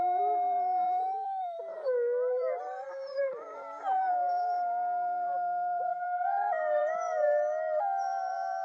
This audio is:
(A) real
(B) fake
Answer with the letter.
B